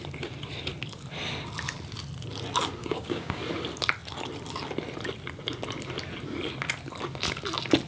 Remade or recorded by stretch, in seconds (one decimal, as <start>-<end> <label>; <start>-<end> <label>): 0.0-2.8 recorded; 2.8-3.4 remade; 3.4-7.9 recorded